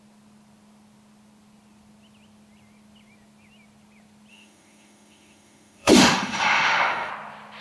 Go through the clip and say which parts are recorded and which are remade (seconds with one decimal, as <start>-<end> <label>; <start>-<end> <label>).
0.0-4.3 recorded; 4.3-7.1 remade; 7.1-7.6 recorded